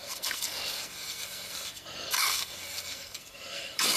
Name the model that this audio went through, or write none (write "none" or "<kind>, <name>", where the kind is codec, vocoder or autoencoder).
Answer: codec, SNAC